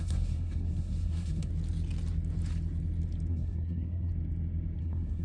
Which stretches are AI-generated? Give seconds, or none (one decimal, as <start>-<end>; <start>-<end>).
0.0-1.5; 3.3-4.1; 4.8-5.2